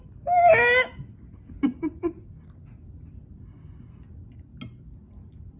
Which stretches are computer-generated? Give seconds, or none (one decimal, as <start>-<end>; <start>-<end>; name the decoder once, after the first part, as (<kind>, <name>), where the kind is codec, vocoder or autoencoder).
1.7-2.3 (vocoder, Vocos)